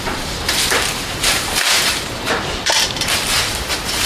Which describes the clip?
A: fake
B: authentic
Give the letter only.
A